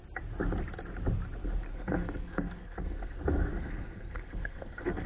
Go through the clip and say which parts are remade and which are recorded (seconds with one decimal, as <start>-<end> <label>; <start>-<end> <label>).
0.0-1.7 recorded; 1.7-5.1 remade